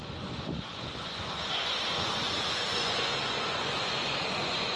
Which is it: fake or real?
fake